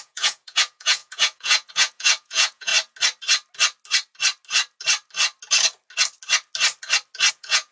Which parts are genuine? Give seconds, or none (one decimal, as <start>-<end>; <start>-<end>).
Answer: 2.7-7.3